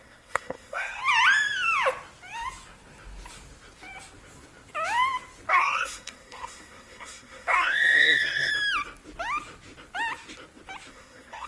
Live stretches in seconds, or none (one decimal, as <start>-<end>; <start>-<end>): 1.0-5.5; 8.5-10.9